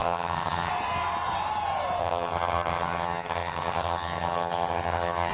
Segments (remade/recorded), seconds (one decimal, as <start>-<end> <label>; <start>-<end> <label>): 0.0-0.7 remade; 0.7-2.0 recorded; 2.0-5.3 remade